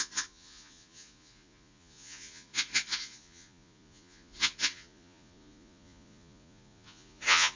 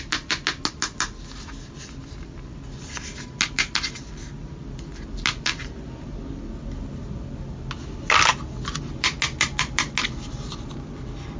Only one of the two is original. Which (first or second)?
second